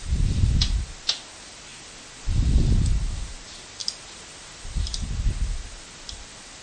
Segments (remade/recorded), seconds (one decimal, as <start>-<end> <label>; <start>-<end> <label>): 0.0-6.6 recorded